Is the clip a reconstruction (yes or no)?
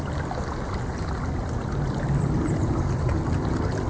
no